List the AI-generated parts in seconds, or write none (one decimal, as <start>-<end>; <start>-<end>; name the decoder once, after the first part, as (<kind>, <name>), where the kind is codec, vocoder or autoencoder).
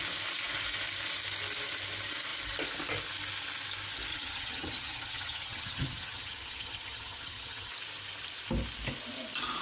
4.1-7.7 (vocoder, HiFi-GAN)